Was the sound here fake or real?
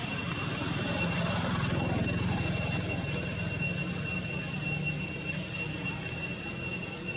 real